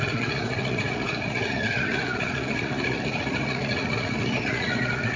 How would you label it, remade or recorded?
remade